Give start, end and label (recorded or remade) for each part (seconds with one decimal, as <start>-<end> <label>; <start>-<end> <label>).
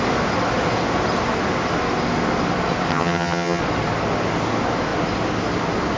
0.0-2.9 recorded; 2.9-3.6 remade; 3.6-6.0 recorded